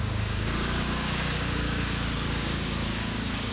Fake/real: fake